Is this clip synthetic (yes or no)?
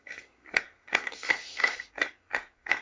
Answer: yes